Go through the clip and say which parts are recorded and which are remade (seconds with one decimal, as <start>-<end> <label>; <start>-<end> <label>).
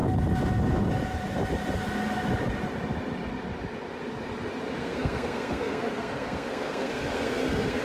0.0-4.8 recorded; 4.8-7.8 remade